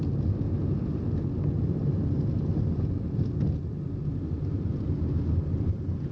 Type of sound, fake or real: real